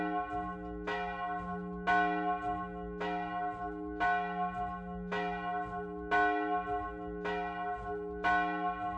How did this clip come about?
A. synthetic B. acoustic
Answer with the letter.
B